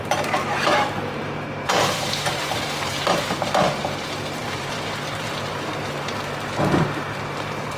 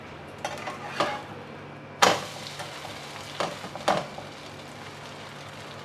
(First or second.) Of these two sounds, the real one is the second